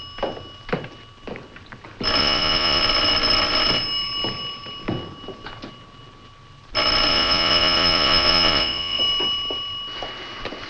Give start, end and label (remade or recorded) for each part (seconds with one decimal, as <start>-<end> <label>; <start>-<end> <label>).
0.0-2.2 recorded; 2.2-2.8 remade; 2.8-7.1 recorded; 7.1-9.0 remade; 9.0-10.7 recorded